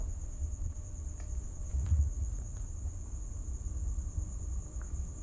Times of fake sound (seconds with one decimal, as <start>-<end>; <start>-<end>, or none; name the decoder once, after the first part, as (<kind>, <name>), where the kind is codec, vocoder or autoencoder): 1.7-2.7 (vocoder, Vocos)